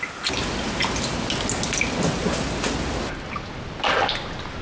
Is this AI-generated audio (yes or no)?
no